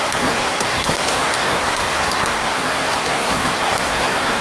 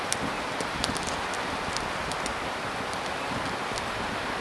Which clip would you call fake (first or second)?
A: first